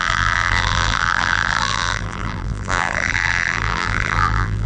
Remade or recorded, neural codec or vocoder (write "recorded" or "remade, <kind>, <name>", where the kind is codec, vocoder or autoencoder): remade, vocoder, BigVGAN v2